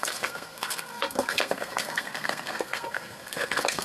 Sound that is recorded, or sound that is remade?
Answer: remade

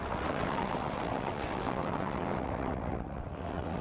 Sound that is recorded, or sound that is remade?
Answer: remade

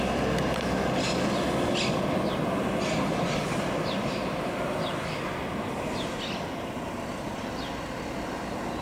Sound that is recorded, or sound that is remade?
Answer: recorded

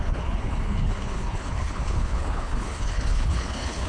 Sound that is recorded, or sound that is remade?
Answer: remade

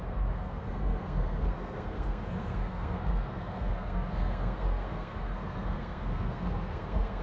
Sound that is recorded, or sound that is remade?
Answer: remade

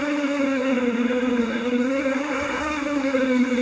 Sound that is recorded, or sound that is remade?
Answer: remade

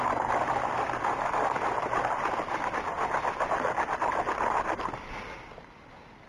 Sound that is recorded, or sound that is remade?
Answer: recorded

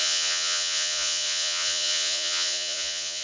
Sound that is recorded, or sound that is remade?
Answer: remade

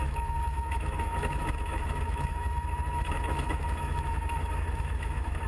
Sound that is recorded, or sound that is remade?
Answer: remade